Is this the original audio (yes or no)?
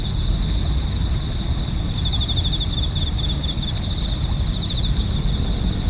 yes